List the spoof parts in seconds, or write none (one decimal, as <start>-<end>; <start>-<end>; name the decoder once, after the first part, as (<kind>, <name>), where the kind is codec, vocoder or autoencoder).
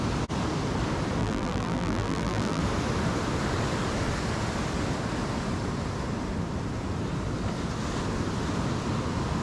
1.2-2.6 (vocoder, BigVGAN v2)